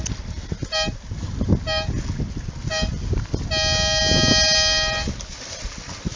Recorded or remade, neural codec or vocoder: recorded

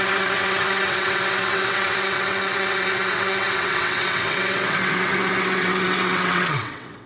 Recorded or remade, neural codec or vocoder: remade, vocoder, WaveNeXt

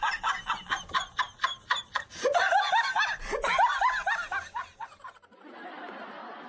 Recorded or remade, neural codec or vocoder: recorded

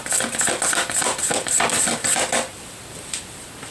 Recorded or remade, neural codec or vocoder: recorded